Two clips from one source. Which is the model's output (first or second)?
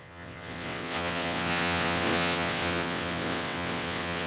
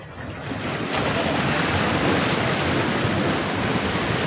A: first